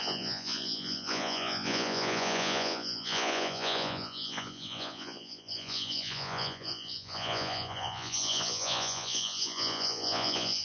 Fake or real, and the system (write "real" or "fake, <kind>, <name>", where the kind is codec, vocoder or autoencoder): fake, vocoder, Vocos